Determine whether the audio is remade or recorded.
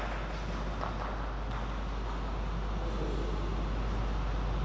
recorded